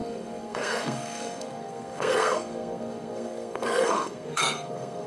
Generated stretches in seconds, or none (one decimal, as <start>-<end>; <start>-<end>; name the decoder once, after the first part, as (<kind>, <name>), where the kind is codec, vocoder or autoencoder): 0.0-5.1 (codec, SNAC)